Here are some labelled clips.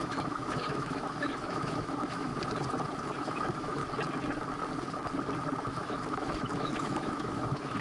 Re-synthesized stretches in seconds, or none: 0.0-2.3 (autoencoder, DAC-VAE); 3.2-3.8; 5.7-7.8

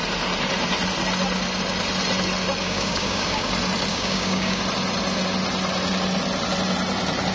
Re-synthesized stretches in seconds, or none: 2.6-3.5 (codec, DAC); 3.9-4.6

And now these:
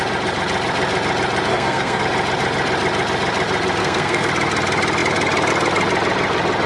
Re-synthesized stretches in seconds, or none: 1.5-2.0 (codec, SNAC); 3.8-4.3